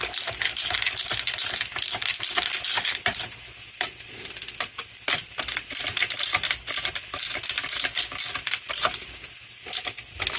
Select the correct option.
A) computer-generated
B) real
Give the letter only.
B